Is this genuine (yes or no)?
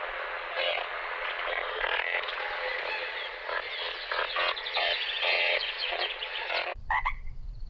no